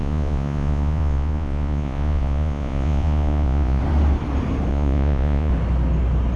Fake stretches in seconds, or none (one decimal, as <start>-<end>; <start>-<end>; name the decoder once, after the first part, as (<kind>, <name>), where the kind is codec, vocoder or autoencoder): 0.0-3.8 (vocoder, Vocos); 4.7-5.5